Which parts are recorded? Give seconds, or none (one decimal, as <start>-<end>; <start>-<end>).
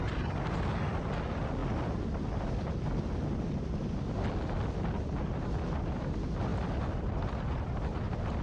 0.0-8.4